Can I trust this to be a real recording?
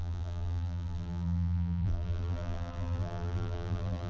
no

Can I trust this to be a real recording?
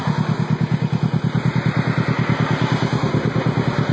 yes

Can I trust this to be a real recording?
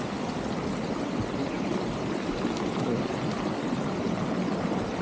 yes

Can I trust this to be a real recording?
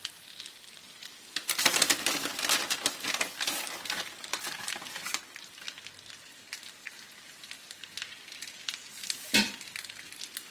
yes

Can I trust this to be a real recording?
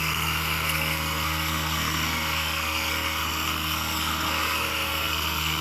no